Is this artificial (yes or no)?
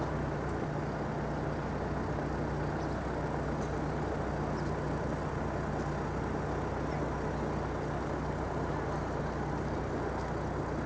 no